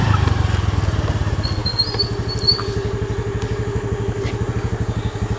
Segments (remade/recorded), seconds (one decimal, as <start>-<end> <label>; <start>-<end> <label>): 0.0-5.4 recorded